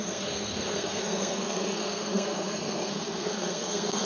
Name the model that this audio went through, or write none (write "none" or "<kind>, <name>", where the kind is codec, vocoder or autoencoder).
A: codec, SNAC